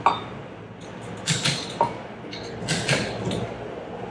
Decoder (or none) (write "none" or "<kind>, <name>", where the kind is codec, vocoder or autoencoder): none